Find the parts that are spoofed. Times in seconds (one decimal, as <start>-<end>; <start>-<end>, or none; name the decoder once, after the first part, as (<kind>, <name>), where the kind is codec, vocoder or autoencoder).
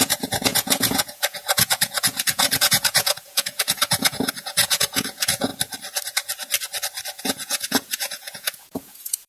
0.0-5.5 (vocoder, Vocos); 7.2-9.3